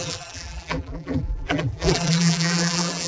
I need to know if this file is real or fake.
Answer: fake